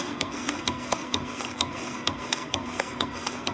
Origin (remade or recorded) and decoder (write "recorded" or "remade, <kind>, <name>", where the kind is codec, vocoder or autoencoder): remade, codec, SNAC